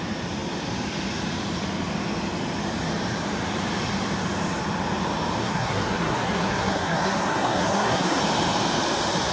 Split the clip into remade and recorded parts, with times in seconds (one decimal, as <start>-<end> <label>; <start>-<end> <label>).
0.0-5.4 recorded; 5.4-8.2 remade; 8.2-9.3 recorded